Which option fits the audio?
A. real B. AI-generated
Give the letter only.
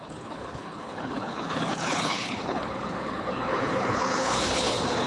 B